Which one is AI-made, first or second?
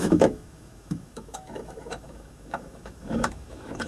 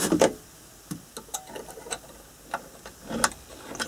first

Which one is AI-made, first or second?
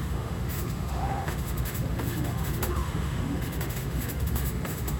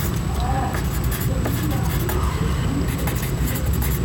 first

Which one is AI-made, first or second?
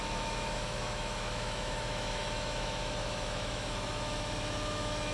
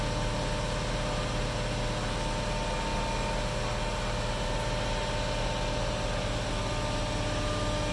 first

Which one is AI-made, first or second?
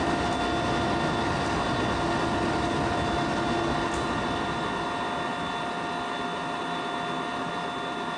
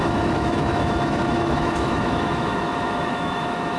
second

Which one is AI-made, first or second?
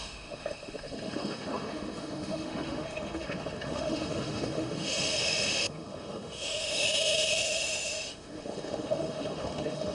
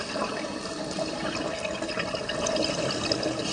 first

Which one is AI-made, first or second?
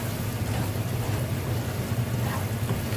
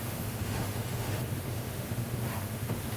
second